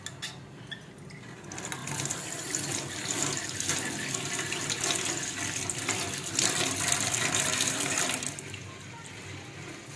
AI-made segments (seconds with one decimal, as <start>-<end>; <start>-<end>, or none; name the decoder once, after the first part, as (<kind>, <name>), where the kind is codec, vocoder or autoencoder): none